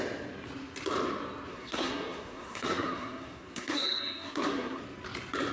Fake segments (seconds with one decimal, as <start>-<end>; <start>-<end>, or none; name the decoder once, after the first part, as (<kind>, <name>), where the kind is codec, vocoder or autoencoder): 1.5-4.8 (codec, SNAC)